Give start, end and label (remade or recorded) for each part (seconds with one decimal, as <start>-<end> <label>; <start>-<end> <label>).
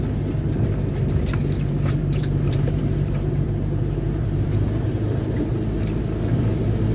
0.0-1.4 recorded; 1.4-5.5 remade; 5.5-6.9 recorded